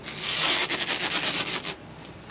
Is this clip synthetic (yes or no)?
no